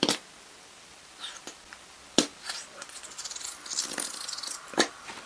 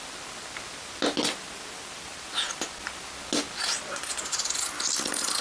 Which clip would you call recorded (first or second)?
second